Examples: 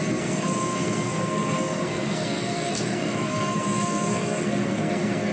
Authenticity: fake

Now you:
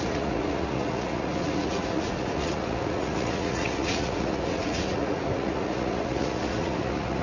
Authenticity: fake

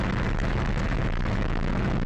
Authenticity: fake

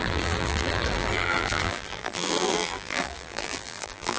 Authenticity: fake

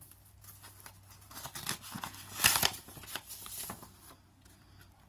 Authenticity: real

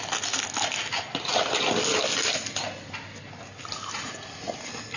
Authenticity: real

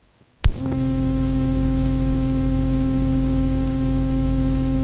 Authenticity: fake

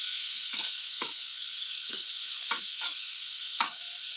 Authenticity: fake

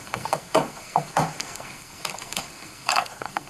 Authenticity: fake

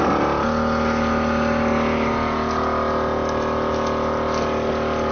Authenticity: real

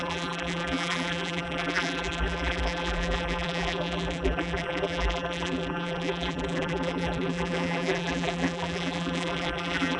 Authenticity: fake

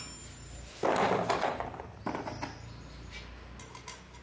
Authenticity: real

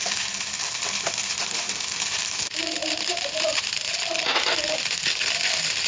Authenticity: real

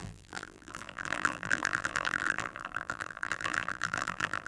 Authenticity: fake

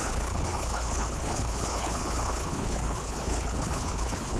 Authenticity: fake